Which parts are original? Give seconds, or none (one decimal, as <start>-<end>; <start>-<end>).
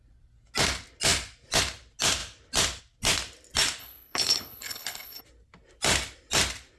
0.0-3.8; 5.2-6.8